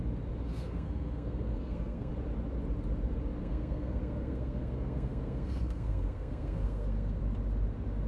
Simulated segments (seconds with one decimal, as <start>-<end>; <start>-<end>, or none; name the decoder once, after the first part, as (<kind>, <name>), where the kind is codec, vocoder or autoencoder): 0.5-2.1 (codec, SNAC); 3.4-7.2